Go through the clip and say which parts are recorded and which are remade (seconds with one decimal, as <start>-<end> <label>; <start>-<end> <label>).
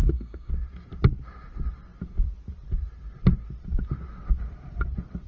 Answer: 0.0-0.5 remade; 0.5-5.3 recorded